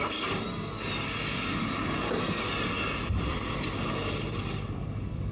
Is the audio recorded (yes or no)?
no